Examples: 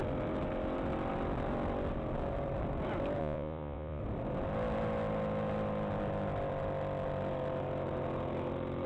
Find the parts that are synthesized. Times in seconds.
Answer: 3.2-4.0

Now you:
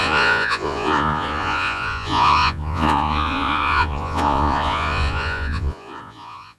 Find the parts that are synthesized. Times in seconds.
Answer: 0.0-6.6

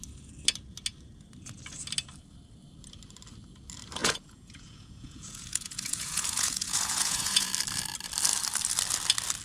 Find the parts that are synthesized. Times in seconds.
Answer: 4.0-7.5

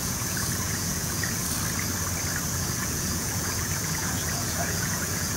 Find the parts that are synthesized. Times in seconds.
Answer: 0.0-1.4; 2.5-5.4

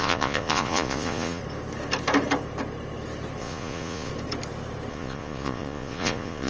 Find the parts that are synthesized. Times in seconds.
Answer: 0.0-1.4; 3.4-4.1; 4.9-6.5

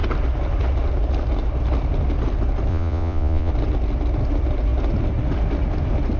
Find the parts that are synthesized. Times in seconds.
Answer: 2.7-3.5